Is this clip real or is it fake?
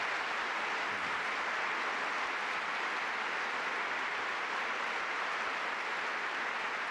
real